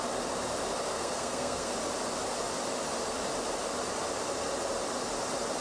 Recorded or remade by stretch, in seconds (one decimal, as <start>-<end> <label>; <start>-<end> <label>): 0.0-0.9 recorded; 0.9-1.7 remade; 1.7-5.6 recorded